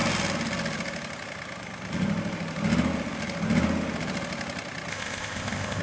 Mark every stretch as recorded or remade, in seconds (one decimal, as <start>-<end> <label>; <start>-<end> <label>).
0.0-4.9 recorded; 4.9-5.8 remade